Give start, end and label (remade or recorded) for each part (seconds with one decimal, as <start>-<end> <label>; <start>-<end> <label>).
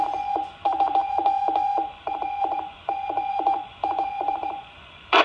0.0-5.2 remade